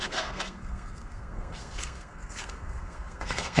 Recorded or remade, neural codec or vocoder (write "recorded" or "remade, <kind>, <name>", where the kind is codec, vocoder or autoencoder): remade, codec, SNAC